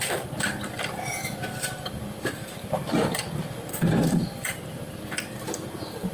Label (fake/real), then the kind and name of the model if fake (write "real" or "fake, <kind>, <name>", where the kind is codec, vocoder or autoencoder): fake, vocoder, BigVGAN v2